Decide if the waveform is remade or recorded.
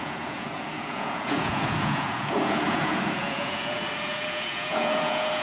remade